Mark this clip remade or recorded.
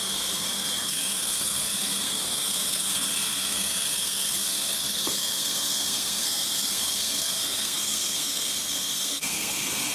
remade